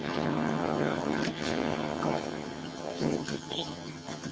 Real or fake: fake